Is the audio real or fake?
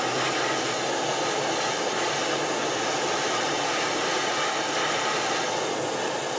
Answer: real